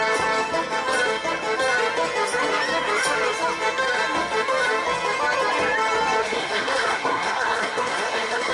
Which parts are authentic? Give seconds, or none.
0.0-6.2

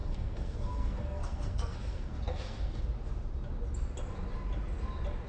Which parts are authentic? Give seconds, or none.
2.8-5.3

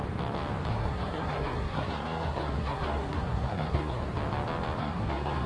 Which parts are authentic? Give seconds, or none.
0.0-0.7; 4.0-4.8

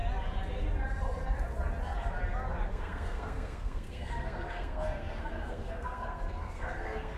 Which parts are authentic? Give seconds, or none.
0.0-2.7

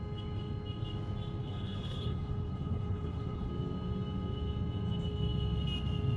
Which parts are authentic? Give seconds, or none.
0.0-1.4; 3.5-6.2